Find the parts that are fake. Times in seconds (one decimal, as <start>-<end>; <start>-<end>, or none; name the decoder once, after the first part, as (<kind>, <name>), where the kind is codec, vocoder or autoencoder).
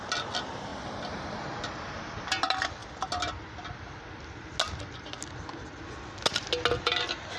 0.0-2.8 (vocoder, BigVGAN v2)